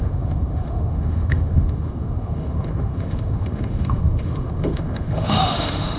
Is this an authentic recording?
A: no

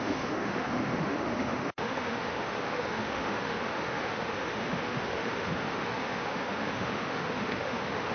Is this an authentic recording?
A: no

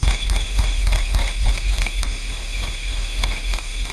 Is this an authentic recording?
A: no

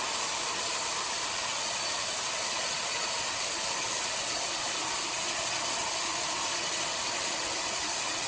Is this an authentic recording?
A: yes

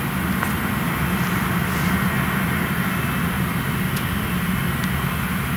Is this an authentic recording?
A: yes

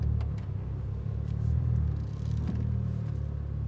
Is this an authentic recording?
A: yes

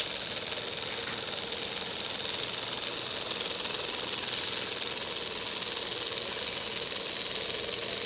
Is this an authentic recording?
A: yes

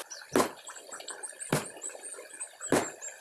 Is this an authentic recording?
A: yes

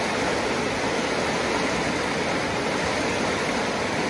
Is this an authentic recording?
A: yes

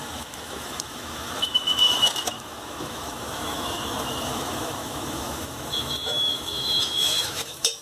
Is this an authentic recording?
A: no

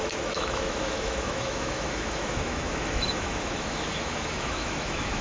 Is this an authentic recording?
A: no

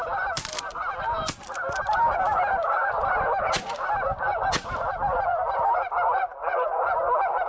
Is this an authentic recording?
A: yes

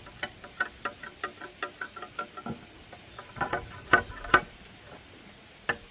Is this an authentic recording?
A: yes